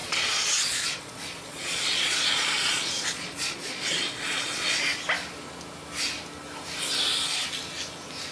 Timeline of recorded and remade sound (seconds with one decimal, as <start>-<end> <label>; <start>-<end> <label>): 0.0-4.8 remade; 4.8-8.3 recorded